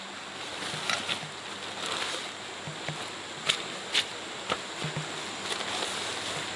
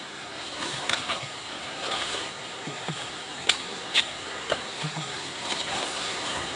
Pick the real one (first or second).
first